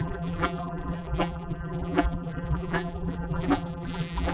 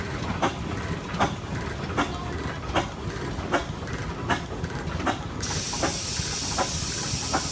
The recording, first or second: second